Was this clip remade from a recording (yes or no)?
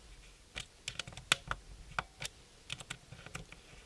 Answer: no